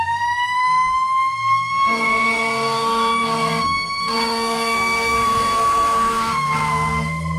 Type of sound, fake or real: fake